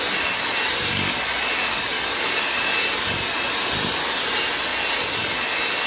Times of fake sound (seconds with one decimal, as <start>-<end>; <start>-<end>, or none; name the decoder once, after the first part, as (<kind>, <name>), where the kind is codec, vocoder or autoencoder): none